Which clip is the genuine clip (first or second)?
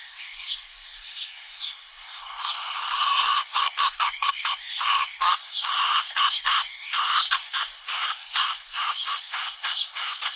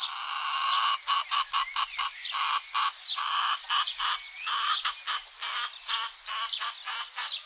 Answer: second